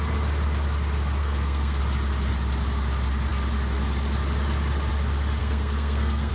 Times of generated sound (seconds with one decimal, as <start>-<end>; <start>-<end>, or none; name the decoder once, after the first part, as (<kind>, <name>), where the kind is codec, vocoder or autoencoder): 1.2-1.8 (codec, SNAC); 5.4-6.3